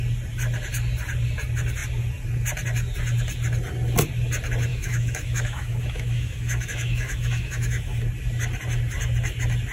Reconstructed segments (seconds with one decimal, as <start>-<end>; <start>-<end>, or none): 4.7-8.0